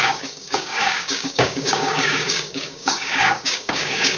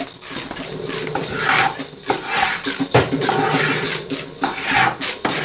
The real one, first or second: second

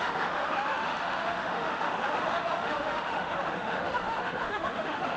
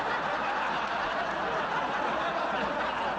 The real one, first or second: second